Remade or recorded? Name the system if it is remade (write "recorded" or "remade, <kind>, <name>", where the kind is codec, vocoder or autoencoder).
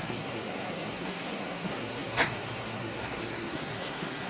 remade, codec, SNAC